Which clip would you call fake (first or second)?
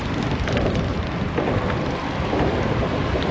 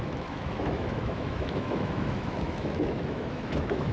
second